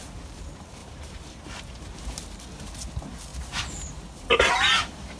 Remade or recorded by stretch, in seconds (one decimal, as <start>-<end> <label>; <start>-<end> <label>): 0.0-0.8 recorded; 0.8-1.7 remade; 1.7-5.2 recorded